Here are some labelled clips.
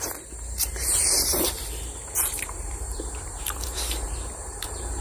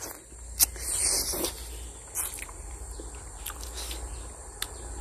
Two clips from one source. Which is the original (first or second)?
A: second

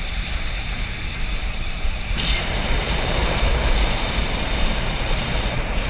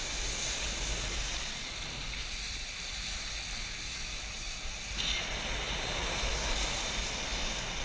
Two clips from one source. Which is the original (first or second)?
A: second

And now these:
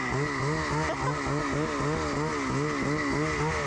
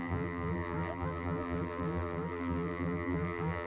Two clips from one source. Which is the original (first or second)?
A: first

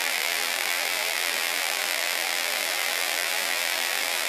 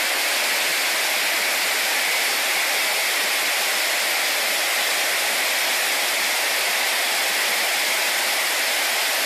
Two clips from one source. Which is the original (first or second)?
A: second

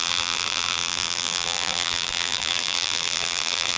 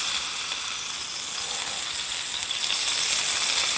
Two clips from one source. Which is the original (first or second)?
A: second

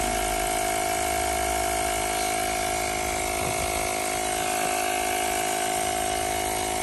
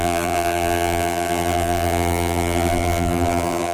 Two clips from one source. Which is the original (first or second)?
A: first